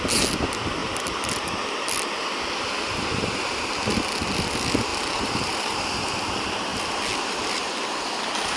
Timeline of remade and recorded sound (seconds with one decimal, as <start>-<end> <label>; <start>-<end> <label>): 0.0-4.9 recorded; 4.9-5.8 remade; 5.8-8.6 recorded